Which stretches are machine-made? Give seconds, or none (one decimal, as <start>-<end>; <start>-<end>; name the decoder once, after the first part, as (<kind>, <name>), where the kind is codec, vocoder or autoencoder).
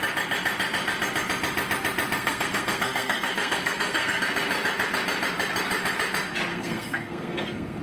2.2-4.2 (codec, SNAC); 6.5-7.8